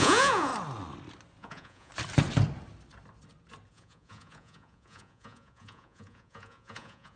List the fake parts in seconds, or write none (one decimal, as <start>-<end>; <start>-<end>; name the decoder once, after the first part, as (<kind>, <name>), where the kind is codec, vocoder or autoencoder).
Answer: 0.0-0.5 (vocoder, Vocos); 1.4-1.9; 3.7-7.2